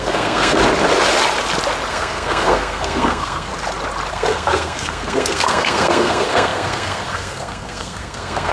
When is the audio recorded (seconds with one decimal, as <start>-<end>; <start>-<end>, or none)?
0.6-1.9; 3.5-4.1